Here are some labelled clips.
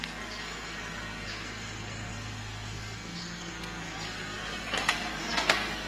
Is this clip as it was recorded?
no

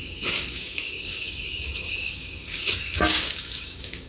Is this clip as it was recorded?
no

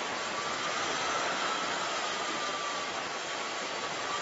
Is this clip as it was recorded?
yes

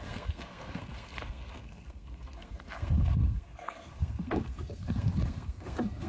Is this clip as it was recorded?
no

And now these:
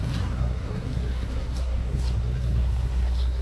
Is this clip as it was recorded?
no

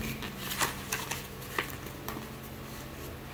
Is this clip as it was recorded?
yes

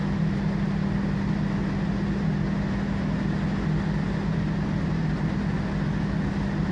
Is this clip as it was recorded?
yes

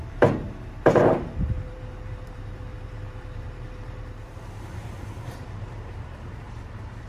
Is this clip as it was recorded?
no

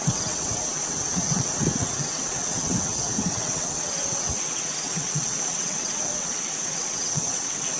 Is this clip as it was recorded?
no